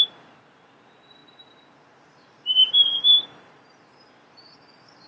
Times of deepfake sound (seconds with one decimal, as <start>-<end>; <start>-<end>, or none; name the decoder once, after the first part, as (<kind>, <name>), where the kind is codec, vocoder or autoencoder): 0.0-5.1 (vocoder, BigVGAN v2)